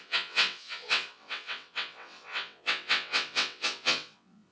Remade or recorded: remade